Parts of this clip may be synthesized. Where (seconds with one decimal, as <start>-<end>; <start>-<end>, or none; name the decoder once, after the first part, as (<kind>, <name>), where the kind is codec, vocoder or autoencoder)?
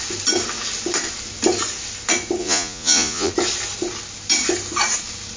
2.4-3.3 (vocoder, Vocos)